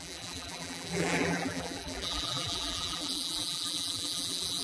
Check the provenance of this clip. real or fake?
fake